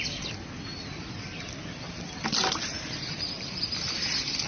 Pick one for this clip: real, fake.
real